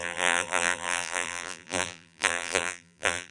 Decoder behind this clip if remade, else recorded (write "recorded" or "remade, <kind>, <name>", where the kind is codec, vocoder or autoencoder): remade, vocoder, BigVGAN v2